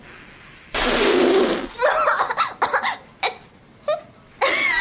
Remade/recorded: recorded